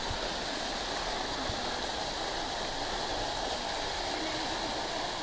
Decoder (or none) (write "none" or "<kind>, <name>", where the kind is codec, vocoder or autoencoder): none